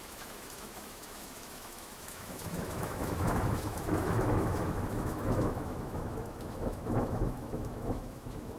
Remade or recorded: remade